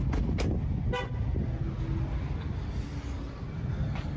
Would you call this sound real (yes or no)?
yes